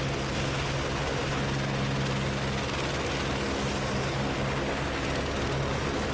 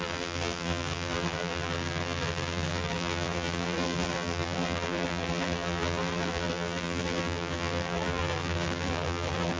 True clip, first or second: first